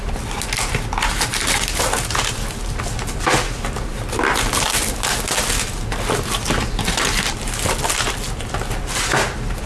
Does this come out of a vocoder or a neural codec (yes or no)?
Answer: no